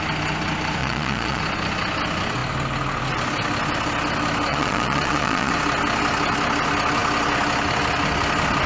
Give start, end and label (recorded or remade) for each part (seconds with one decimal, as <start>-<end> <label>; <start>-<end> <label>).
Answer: 0.0-0.8 recorded; 0.8-1.4 remade; 1.4-4.5 recorded; 4.5-5.5 remade; 5.5-8.7 recorded